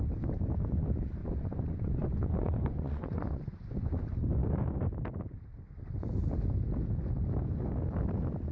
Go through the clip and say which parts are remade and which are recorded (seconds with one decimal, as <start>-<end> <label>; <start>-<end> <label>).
0.0-1.2 recorded; 1.2-3.9 remade; 3.9-8.5 recorded